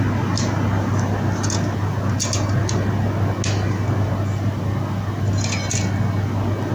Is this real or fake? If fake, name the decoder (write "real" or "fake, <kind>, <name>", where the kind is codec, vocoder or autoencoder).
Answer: real